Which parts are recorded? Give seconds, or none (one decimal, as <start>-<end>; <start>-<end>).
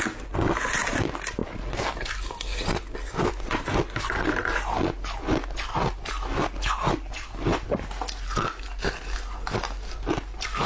0.0-10.7